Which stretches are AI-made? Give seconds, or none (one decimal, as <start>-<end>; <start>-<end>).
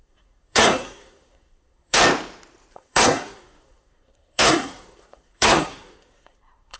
0.0-2.0; 2.7-6.8